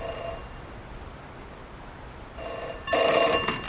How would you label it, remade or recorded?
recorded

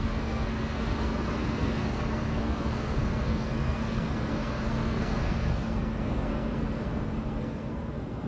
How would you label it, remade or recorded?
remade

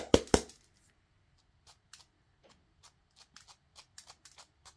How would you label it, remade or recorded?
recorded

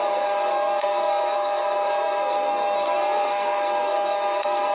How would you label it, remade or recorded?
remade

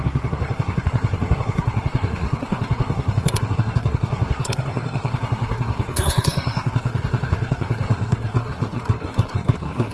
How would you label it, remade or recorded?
remade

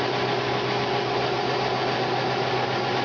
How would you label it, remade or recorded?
recorded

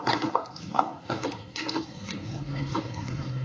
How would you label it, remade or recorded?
remade